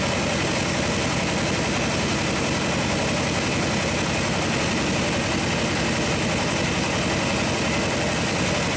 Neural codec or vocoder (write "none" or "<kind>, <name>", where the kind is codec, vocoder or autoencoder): none